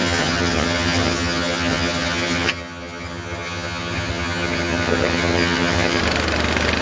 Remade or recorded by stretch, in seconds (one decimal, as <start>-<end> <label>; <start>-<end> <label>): 0.0-6.0 remade; 6.0-6.8 recorded